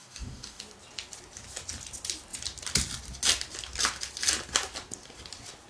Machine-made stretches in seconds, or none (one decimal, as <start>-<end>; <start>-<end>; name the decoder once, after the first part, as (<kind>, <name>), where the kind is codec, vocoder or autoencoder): 0.0-0.6 (codec, DAC)

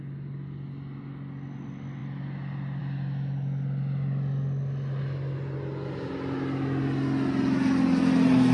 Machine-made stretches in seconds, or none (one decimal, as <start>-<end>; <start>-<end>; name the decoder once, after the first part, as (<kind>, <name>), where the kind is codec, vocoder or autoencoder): none

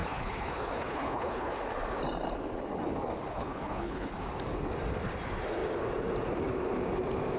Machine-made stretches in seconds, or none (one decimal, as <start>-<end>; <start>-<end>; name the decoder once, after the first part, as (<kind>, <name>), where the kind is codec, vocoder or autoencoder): 0.0-1.5 (codec, HILCodec); 3.3-4.1

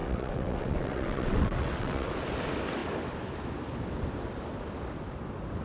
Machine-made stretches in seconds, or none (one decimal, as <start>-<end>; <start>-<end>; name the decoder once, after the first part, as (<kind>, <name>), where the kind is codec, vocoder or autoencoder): 0.0-2.1 (vocoder, WaveNeXt)

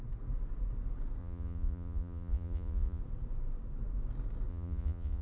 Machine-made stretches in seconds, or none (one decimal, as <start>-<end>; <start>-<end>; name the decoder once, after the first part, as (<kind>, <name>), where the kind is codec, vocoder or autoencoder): 1.2-3.0 (vocoder, Vocos); 4.5-5.2

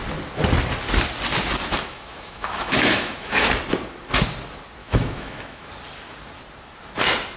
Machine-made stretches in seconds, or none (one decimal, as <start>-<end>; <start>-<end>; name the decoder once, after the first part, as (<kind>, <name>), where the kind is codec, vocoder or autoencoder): 1.6-3.5 (autoencoder, DAC-VAE); 4.8-5.7

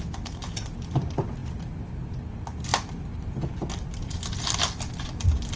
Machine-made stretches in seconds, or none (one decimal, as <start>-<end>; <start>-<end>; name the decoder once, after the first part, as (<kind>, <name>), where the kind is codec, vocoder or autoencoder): none

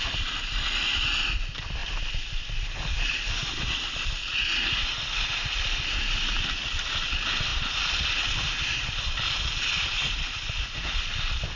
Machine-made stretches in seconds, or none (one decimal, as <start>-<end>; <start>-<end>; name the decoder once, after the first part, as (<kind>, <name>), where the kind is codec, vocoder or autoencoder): none